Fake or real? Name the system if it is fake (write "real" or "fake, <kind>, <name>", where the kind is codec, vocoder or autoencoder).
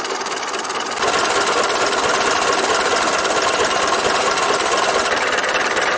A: real